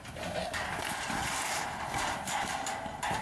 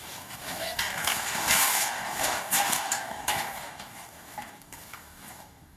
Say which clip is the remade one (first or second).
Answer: second